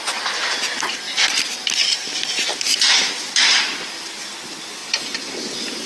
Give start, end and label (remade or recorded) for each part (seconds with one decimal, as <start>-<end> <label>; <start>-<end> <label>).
0.0-5.9 recorded

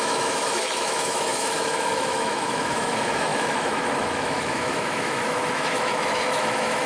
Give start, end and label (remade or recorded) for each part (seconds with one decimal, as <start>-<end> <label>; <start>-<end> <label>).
0.0-6.9 remade

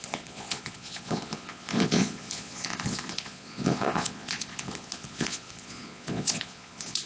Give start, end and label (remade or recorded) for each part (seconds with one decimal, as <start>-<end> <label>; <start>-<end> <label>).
0.0-7.1 remade

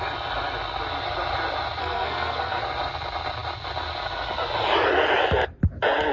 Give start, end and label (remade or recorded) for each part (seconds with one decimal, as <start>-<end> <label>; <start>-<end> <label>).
0.0-1.8 recorded; 1.8-2.6 remade; 2.6-6.1 recorded

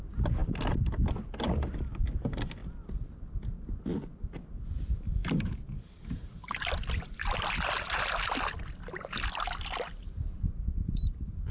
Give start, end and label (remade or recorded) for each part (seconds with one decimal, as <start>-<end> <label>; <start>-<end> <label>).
0.0-5.2 recorded; 5.2-6.7 remade; 6.7-11.5 recorded

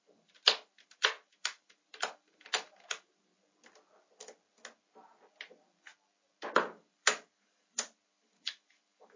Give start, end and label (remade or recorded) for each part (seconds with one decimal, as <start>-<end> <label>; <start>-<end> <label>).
0.0-3.3 remade; 3.3-6.5 recorded; 6.5-9.2 remade

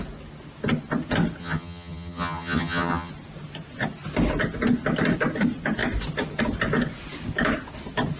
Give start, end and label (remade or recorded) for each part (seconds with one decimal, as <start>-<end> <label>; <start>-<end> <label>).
0.0-1.4 recorded; 1.4-3.1 remade; 3.1-8.2 recorded

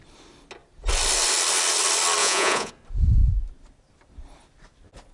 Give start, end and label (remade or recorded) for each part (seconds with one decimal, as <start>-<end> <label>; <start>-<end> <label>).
0.0-2.2 recorded; 2.2-2.7 remade; 2.7-5.1 recorded